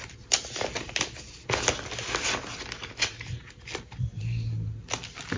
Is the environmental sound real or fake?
real